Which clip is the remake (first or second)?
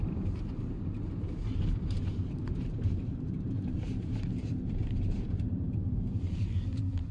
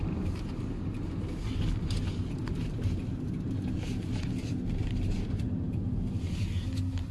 first